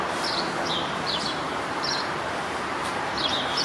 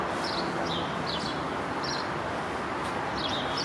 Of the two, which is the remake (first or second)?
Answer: first